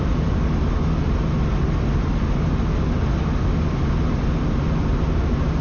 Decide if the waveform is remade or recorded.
recorded